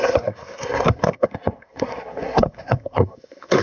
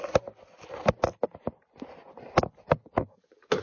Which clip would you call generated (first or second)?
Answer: first